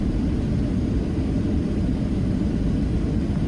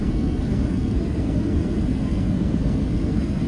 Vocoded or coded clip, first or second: second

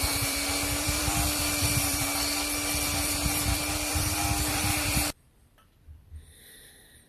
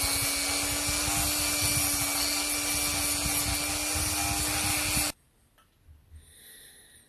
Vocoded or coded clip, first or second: first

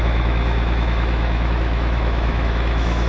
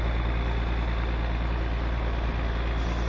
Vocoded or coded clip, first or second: first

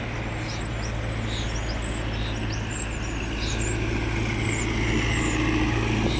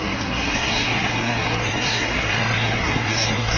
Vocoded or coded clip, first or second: second